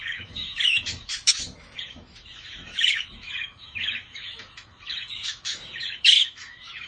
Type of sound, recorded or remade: remade